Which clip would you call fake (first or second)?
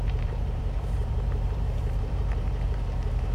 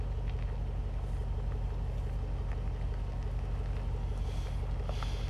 first